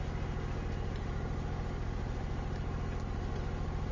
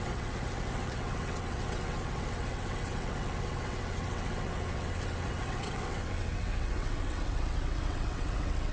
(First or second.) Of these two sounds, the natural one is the first